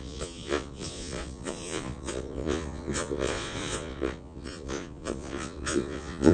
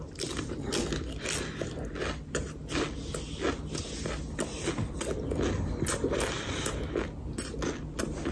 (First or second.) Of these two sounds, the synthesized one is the first